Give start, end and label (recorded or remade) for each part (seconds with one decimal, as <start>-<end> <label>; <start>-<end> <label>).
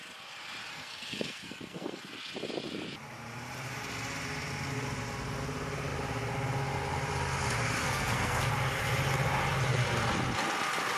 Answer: 0.0-0.7 recorded; 0.7-2.0 remade; 2.0-7.8 recorded; 7.8-8.5 remade; 8.5-11.0 recorded